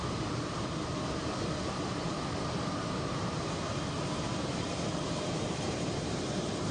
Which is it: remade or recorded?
remade